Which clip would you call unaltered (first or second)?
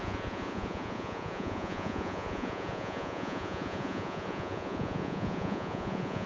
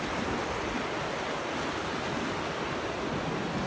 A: second